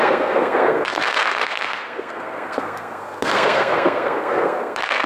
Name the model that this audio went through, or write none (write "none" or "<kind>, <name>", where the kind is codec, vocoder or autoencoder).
codec, SNAC